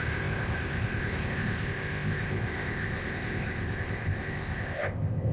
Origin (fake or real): fake